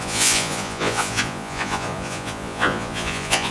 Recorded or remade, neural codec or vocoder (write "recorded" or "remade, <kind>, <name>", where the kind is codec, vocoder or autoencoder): remade, vocoder, Vocos